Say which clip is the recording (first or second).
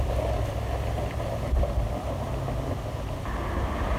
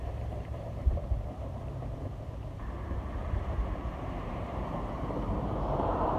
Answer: first